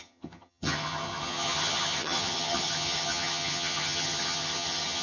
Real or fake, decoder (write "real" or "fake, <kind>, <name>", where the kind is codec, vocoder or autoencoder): fake, vocoder, HiFi-GAN